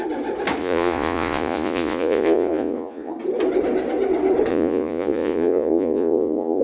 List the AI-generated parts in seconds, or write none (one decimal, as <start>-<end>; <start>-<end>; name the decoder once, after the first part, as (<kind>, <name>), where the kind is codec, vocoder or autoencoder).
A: 0.6-3.1 (vocoder, Vocos); 4.5-6.6